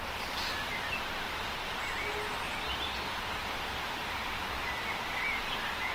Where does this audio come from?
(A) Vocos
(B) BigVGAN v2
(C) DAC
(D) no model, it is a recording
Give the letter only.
D